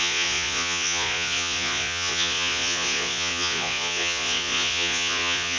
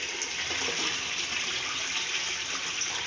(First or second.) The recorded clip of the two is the second